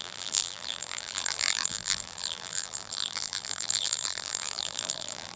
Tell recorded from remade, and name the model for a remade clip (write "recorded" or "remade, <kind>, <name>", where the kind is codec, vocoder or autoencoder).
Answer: remade, vocoder, BigVGAN v2